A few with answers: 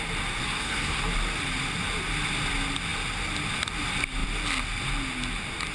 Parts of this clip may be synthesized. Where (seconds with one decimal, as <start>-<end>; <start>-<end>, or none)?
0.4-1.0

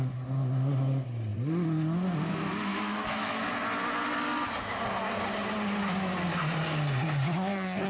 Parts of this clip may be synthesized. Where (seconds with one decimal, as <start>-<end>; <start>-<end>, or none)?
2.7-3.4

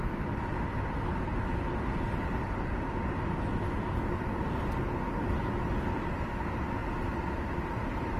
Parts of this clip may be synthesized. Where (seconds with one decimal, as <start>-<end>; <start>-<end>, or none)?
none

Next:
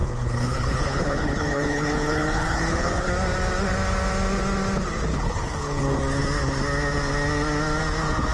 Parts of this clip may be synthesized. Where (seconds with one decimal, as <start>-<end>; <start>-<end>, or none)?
0.0-3.1; 5.1-6.0

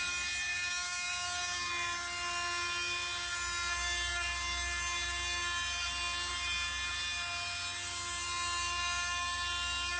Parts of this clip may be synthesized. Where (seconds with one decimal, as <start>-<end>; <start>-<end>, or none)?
0.5-1.7